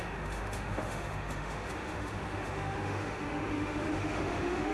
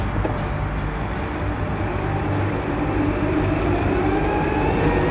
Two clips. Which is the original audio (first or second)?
second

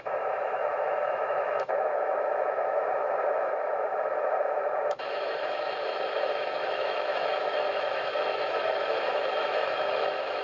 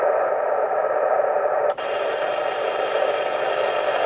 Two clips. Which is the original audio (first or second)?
second